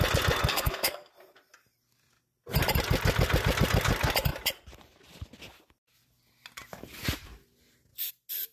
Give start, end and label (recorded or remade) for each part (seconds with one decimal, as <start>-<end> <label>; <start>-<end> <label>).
0.0-0.5 recorded; 0.5-1.1 remade; 1.1-8.5 recorded